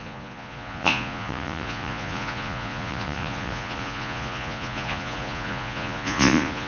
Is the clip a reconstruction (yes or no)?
yes